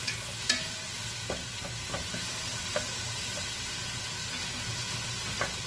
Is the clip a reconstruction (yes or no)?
no